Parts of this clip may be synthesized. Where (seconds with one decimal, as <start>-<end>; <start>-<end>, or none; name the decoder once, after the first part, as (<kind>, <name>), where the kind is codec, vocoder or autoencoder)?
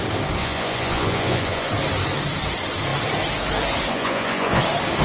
0.4-1.7 (vocoder, Vocos); 3.9-4.6